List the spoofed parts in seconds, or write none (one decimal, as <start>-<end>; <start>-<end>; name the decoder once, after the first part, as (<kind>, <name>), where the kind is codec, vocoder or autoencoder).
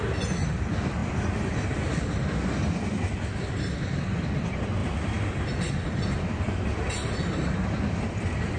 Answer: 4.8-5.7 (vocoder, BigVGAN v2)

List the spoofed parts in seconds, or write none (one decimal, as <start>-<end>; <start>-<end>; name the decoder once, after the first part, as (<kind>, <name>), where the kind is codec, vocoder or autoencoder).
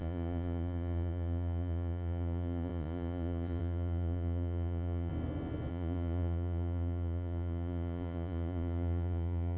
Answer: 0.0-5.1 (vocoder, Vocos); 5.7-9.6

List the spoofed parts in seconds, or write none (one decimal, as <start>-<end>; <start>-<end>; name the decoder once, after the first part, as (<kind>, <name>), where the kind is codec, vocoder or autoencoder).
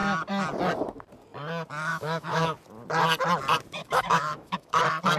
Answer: 1.9-2.5 (autoencoder, DAC-VAE); 3.8-4.8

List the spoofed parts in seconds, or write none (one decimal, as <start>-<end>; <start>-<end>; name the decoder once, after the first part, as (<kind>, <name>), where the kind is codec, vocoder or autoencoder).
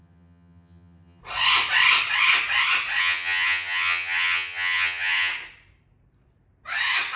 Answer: 0.0-1.2 (vocoder, HiFi-GAN); 3.0-5.3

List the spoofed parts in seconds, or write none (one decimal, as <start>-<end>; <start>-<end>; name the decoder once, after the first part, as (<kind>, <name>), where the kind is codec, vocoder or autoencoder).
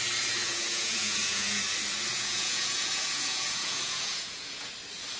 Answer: 0.4-1.6 (vocoder, Vocos); 2.1-4.7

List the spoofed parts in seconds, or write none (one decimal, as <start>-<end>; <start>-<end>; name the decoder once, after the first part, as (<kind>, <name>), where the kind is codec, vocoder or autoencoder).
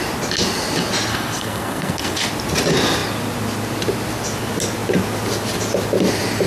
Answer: 1.1-2.3 (codec, SNAC)